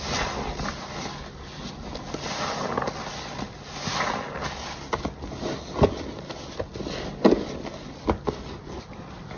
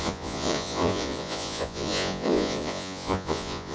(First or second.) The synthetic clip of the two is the second